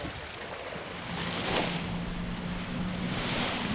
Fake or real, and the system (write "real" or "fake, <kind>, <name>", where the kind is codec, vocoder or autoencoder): real